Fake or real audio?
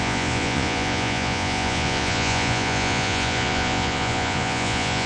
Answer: fake